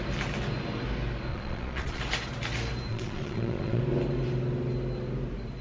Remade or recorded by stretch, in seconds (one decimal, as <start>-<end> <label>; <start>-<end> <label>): 0.0-1.3 recorded; 1.3-2.0 remade; 2.0-2.9 recorded; 2.9-3.8 remade; 3.8-5.6 recorded